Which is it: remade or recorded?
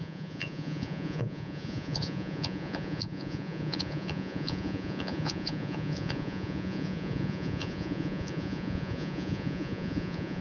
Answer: remade